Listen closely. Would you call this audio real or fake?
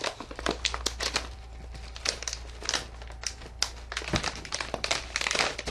real